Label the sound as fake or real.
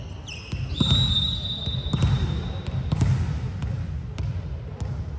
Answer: real